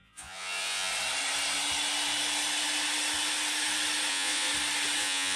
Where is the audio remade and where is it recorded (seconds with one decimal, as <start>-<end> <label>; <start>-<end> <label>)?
0.0-0.9 remade; 0.9-4.1 recorded; 4.1-4.5 remade; 4.5-5.0 recorded; 5.0-5.4 remade